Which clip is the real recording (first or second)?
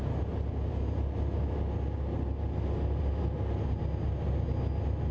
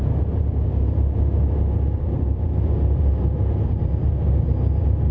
first